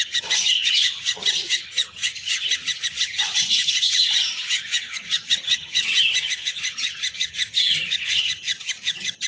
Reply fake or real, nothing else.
fake